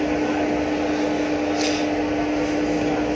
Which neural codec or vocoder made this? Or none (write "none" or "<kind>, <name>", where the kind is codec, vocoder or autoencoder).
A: none